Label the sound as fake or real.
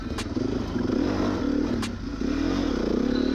real